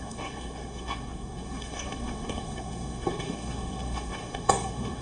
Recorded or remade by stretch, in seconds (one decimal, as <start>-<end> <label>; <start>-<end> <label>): 0.0-5.0 remade